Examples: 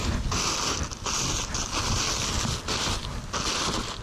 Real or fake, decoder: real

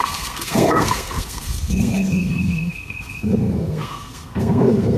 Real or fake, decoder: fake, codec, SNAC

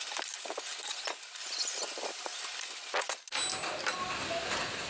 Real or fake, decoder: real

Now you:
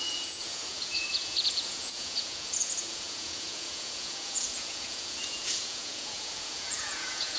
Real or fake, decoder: fake, vocoder, Vocos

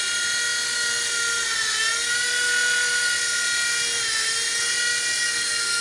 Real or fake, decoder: real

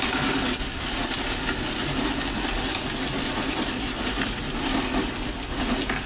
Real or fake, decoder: real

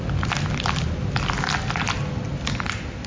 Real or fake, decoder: real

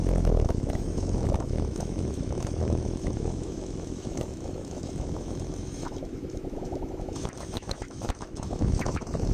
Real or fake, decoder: fake, autoencoder, DAC-VAE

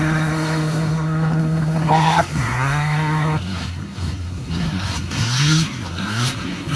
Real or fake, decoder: fake, codec, SNAC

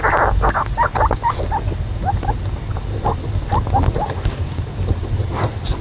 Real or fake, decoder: real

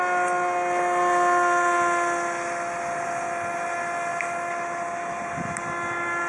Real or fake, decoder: real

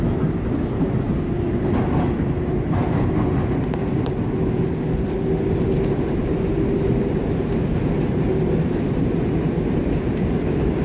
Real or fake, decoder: real